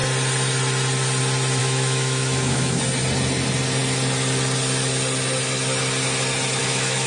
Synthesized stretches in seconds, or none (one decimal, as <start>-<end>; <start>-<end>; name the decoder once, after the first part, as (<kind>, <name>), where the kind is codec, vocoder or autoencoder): 1.6-2.8 (autoencoder, DAC-VAE); 6.6-7.1